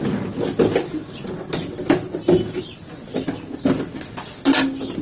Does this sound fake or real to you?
real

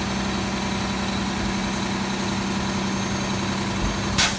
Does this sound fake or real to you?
real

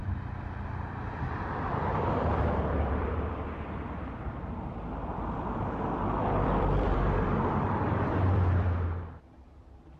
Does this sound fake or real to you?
fake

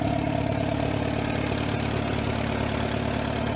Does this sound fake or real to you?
real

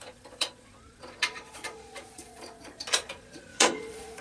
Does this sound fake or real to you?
fake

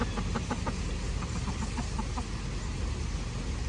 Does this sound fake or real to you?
real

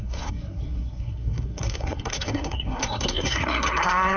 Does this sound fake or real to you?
fake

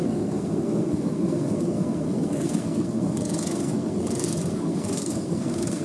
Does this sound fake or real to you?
fake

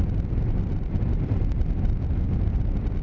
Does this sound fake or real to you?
real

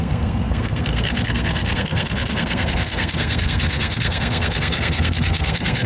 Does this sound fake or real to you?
fake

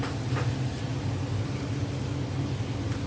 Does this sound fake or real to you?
real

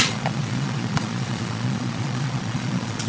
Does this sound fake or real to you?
fake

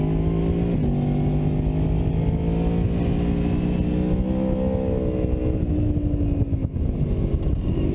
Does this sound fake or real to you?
real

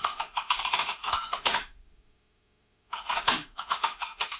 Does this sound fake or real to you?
fake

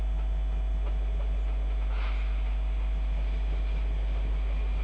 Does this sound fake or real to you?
real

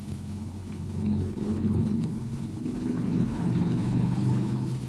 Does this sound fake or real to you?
fake